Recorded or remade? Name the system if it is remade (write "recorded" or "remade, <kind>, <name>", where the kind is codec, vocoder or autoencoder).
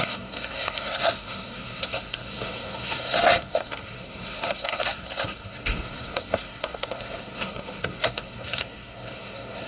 remade, codec, SNAC